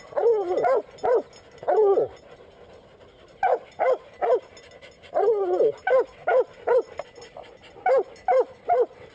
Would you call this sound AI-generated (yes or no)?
no